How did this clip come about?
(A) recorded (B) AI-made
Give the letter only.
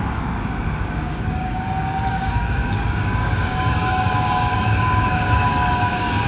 B